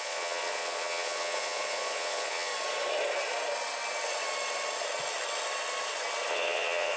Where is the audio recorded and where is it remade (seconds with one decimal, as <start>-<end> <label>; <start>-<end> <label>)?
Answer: 0.0-2.5 remade; 2.5-6.3 recorded; 6.3-7.0 remade